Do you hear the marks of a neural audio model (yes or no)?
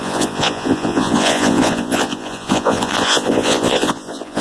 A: yes